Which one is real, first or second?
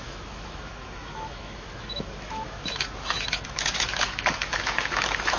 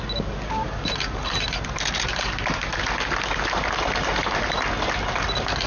second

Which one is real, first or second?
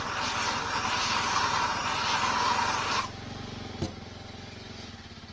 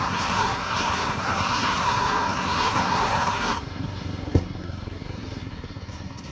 first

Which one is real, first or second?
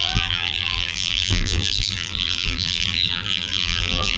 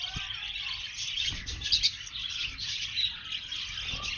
second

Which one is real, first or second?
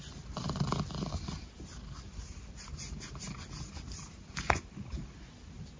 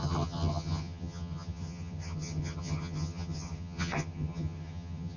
first